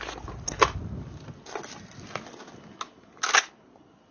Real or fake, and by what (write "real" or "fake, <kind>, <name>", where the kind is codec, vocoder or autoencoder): real